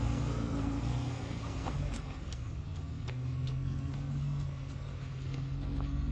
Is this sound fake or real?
fake